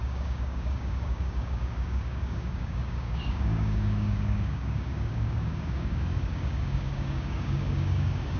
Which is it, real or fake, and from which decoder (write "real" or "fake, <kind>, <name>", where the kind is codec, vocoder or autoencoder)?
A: fake, codec, DAC